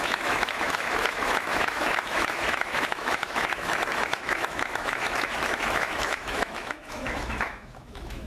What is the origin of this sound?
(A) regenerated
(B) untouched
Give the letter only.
A